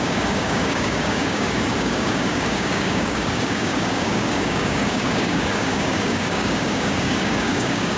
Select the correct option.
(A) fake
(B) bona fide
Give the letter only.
A